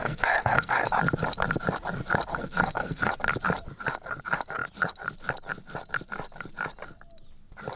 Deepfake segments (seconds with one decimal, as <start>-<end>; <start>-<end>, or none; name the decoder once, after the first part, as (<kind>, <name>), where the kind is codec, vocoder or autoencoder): 0.0-0.9 (codec, SNAC); 2.3-3.1